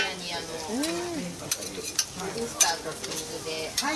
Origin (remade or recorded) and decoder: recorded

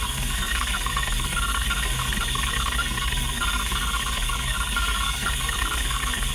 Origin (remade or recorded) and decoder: remade, codec, SNAC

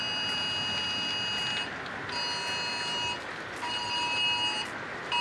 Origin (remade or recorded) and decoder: recorded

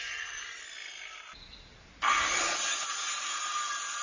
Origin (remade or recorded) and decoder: recorded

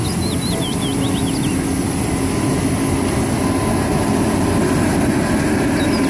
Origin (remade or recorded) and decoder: recorded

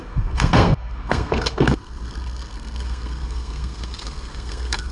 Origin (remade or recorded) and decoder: remade, codec, SNAC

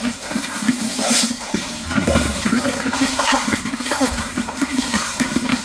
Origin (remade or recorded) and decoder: remade, codec, SNAC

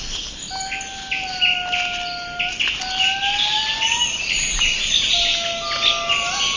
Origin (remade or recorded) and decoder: recorded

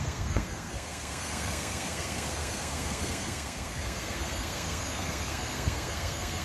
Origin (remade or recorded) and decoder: remade, codec, SNAC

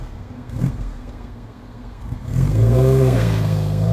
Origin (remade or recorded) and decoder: remade, codec, SNAC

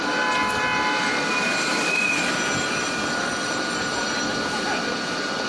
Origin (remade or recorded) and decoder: recorded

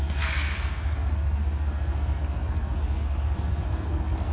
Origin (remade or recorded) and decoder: remade, codec, SNAC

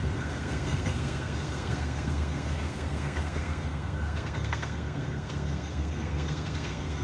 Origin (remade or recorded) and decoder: remade, codec, SNAC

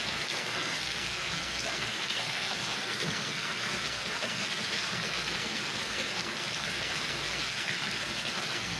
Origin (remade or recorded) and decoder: remade, codec, SNAC